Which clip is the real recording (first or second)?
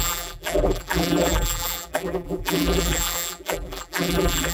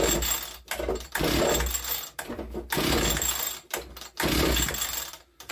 second